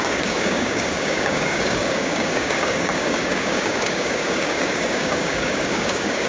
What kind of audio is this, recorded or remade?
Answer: remade